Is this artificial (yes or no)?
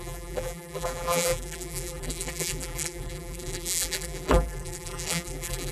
yes